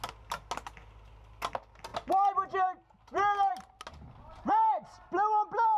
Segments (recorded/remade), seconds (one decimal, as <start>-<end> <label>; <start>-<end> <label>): 0.0-5.8 recorded